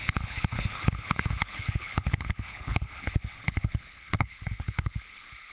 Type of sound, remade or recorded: remade